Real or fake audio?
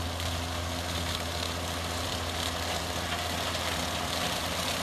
real